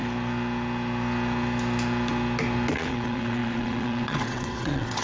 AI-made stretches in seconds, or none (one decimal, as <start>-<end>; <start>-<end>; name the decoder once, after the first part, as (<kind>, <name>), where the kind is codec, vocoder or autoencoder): 2.7-5.0 (vocoder, WaveNeXt)